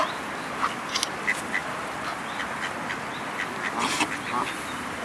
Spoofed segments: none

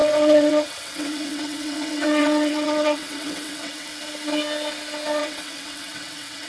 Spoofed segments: 0.0-3.9 (vocoder, WaveNeXt); 5.2-6.5

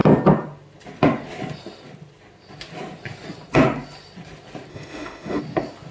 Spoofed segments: 4.7-5.4 (autoencoder, DAC-VAE)

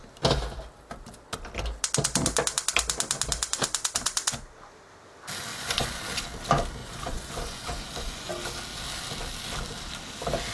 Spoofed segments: 5.5-6.0 (vocoder, Vocos); 6.8-8.3